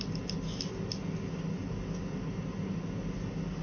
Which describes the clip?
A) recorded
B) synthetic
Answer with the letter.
A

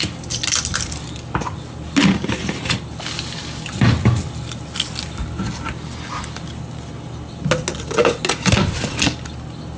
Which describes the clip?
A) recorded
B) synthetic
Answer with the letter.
A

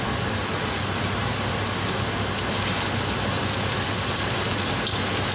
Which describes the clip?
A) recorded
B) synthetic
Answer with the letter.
A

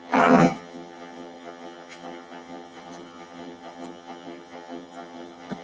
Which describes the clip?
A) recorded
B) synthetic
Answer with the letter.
B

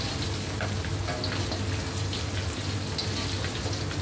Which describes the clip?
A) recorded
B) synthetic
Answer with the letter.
A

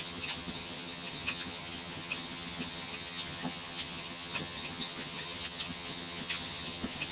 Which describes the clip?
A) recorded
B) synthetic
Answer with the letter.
B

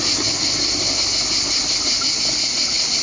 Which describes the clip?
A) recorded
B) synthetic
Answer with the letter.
A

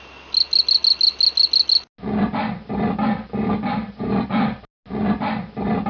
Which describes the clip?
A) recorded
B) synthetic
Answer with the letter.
A